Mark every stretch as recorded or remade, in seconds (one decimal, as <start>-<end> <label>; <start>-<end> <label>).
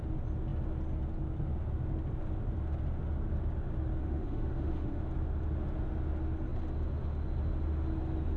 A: 0.0-4.0 recorded; 4.0-5.0 remade; 5.0-8.4 recorded